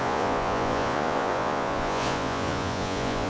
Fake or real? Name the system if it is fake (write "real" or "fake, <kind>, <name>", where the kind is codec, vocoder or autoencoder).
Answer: fake, vocoder, Vocos